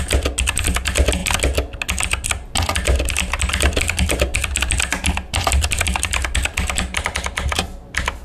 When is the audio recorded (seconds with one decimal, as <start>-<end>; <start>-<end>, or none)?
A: 0.0-8.2